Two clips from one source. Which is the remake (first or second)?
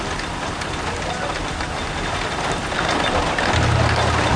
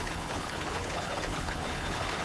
second